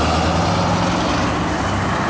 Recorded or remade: recorded